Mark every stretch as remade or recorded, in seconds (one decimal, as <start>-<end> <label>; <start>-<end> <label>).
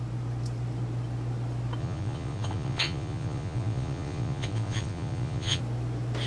0.0-1.8 recorded; 1.8-5.6 remade; 5.6-6.3 recorded